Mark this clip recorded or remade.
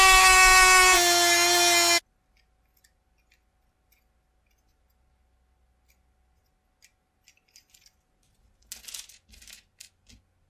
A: recorded